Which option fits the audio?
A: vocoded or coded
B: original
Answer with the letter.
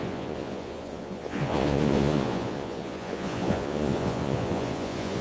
A